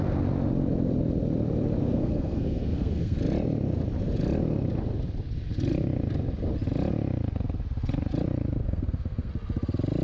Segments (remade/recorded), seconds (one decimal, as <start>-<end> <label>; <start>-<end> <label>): 0.0-1.8 recorded; 1.8-3.2 remade; 3.2-8.6 recorded; 8.6-9.3 remade; 9.3-10.0 recorded